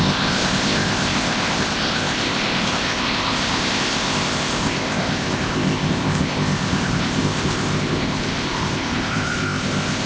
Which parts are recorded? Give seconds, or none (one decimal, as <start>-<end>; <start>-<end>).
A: none

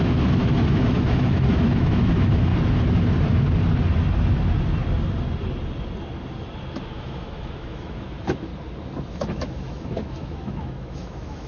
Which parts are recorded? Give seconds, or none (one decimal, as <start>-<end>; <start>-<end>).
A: 2.5-6.8; 8.5-9.1

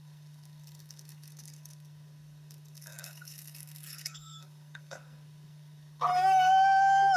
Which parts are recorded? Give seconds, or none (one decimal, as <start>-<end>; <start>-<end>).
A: 6.1-7.2

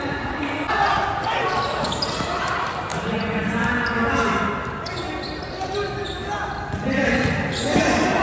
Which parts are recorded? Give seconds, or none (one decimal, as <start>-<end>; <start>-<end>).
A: 0.0-8.2

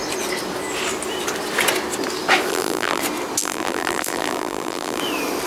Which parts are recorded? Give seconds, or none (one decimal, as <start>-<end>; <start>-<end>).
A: 0.0-2.5; 3.0-3.4; 5.0-5.5

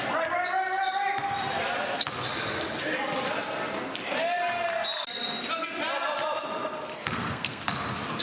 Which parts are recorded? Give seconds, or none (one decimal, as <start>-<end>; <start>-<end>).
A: 0.0-6.9; 7.6-8.2

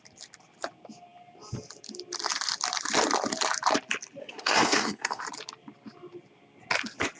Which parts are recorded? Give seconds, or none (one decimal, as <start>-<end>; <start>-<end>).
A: 0.0-4.2; 5.2-7.2